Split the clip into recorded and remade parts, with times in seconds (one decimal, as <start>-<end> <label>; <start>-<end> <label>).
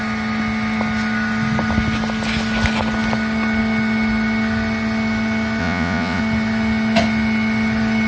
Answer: 0.0-5.6 recorded; 5.6-6.2 remade; 6.2-8.1 recorded